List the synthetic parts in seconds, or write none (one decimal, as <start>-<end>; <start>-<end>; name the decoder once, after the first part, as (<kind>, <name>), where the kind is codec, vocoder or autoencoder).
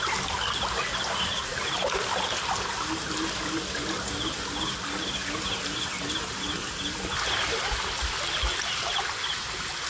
none